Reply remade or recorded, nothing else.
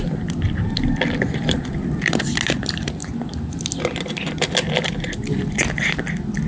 recorded